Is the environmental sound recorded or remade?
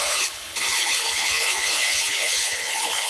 remade